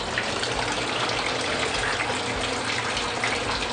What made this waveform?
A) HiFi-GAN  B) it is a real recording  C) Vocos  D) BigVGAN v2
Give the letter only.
B